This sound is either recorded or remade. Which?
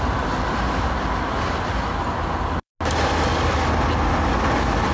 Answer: recorded